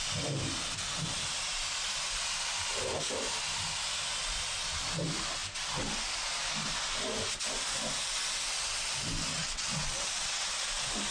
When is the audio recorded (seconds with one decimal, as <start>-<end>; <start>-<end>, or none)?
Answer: 0.0-9.3; 10.5-11.1